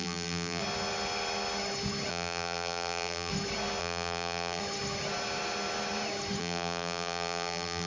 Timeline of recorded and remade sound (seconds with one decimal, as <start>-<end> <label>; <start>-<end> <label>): 0.0-0.6 remade; 0.6-2.1 recorded; 2.1-3.3 remade; 3.3-3.8 recorded; 3.8-4.6 remade; 4.6-6.4 recorded; 6.4-7.9 remade